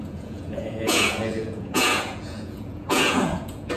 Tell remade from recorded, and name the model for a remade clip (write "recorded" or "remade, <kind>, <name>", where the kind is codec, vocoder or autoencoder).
remade, vocoder, Vocos